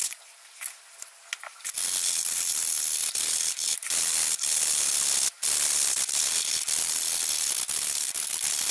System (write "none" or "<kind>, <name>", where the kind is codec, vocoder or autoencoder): none